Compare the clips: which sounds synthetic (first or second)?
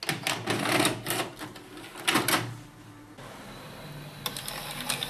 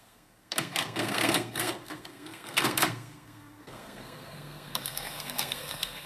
second